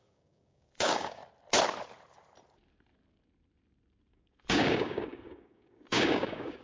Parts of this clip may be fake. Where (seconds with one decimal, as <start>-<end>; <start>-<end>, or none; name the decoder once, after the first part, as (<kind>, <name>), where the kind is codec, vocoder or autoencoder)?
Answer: 0.0-1.2 (codec, DAC); 4.1-6.6